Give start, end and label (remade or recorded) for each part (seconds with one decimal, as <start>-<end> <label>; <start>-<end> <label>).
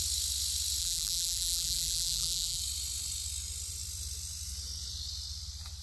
0.0-0.8 recorded; 0.8-2.6 remade; 2.6-5.8 recorded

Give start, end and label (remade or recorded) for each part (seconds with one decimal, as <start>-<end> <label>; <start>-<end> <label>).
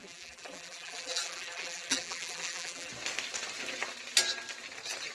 0.0-2.9 remade; 2.9-5.1 recorded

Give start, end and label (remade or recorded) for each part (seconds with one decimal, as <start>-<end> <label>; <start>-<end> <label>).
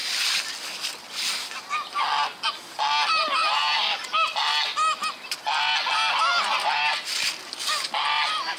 0.0-8.6 recorded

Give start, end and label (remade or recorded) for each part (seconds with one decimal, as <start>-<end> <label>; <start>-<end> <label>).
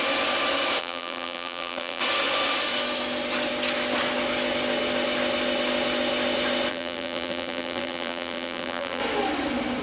0.0-0.8 recorded; 0.8-2.0 remade; 2.0-6.7 recorded; 6.7-9.0 remade; 9.0-9.8 recorded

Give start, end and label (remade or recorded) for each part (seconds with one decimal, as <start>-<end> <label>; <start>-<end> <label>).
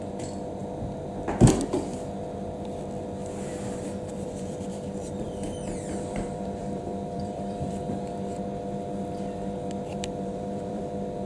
0.0-3.5 recorded; 3.5-8.4 remade; 8.4-9.9 recorded; 9.9-10.8 remade; 10.8-11.3 recorded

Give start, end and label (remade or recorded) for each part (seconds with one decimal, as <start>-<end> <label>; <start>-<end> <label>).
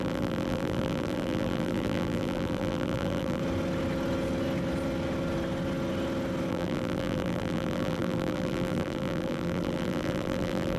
0.0-3.4 remade; 3.4-6.5 recorded; 6.5-10.8 remade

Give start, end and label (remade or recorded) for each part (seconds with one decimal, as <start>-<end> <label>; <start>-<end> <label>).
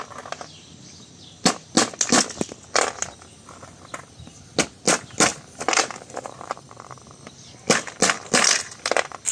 0.0-5.3 recorded; 5.3-7.0 remade; 7.0-9.3 recorded